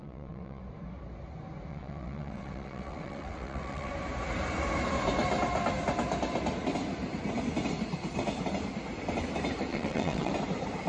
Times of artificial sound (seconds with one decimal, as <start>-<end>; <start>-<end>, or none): 0.0-0.6; 1.7-3.9; 9.7-10.3